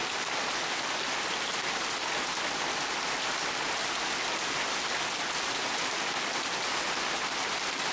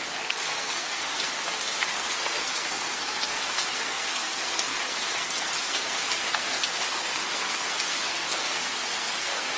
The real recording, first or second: first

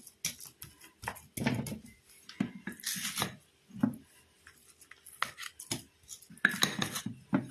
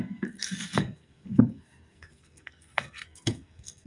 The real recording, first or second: first